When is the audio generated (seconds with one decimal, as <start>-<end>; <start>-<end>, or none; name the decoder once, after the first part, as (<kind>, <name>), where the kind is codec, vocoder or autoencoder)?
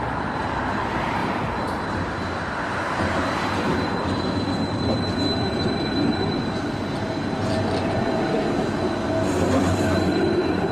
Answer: none